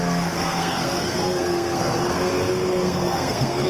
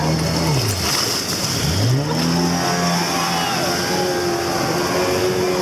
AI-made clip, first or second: first